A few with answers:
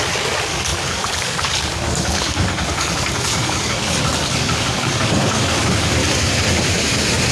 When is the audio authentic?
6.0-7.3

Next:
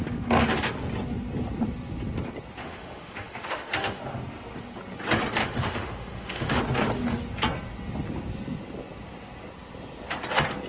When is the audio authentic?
0.0-2.6; 4.0-5.4; 6.6-10.7

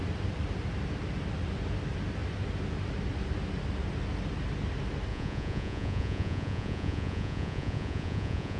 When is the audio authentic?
0.0-5.1

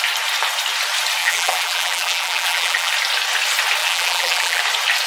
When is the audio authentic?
0.0-1.2; 2.9-3.8; 4.6-5.1

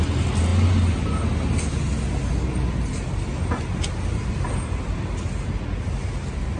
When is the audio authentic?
0.0-6.6

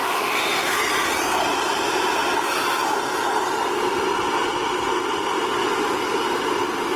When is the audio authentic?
0.8-7.0

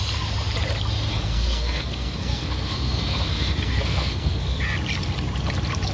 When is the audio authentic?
0.0-1.1; 4.6-5.9

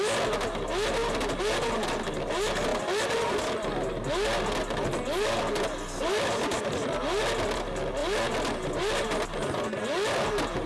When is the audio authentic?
0.0-10.7